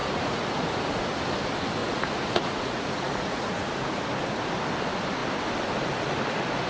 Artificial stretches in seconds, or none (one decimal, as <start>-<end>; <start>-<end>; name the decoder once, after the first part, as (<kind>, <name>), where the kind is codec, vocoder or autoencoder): 0.0-0.9 (vocoder, Vocos); 1.8-4.0